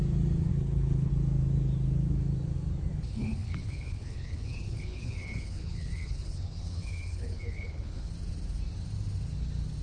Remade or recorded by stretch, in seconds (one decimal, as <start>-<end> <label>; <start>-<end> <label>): 0.0-0.5 recorded; 0.5-1.1 remade; 1.1-2.9 recorded; 2.9-8.1 remade; 8.1-9.8 recorded